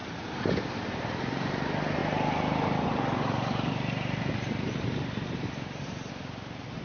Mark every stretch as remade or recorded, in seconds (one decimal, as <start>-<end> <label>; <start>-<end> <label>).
0.0-0.8 recorded; 0.8-6.8 remade